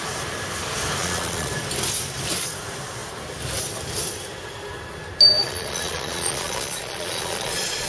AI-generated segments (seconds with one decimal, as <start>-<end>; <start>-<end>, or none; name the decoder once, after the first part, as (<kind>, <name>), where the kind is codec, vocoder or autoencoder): 1.0-1.5 (vocoder, Vocos); 5.4-7.9